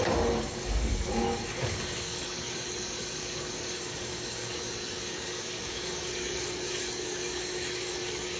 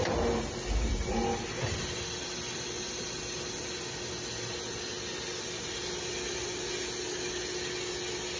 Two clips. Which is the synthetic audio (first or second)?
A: first